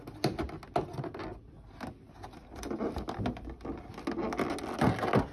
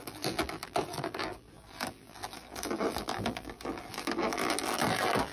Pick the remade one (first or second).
second